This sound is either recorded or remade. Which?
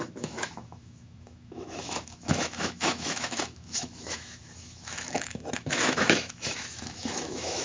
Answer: remade